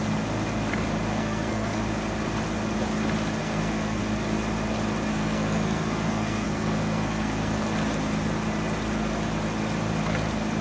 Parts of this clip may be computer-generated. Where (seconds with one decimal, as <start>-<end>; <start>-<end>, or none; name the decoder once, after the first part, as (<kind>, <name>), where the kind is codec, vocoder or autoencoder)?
1.1-1.8 (codec, SNAC); 3.4-4.0; 5.1-7.6